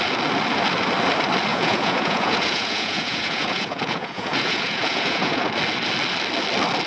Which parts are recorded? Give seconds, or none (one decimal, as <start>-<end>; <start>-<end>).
0.0-1.5; 5.4-6.9

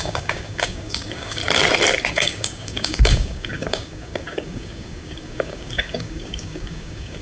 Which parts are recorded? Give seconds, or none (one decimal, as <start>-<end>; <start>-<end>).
1.4-2.1

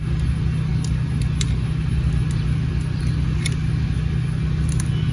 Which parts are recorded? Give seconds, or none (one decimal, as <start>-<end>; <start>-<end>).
0.0-5.1

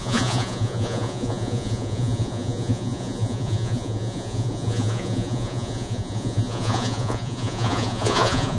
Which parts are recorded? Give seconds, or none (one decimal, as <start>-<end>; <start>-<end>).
none